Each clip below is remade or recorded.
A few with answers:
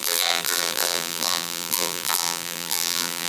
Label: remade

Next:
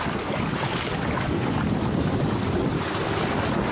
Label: remade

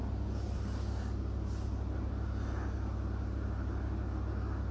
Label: recorded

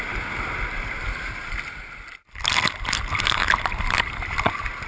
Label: recorded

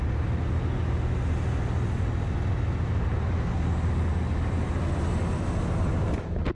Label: recorded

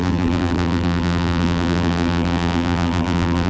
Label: remade